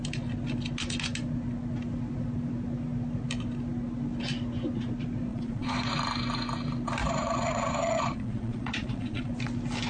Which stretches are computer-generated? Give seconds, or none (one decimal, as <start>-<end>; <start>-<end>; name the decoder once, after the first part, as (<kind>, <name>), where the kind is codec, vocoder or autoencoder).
5.3-5.9 (vocoder, Vocos); 7.0-9.3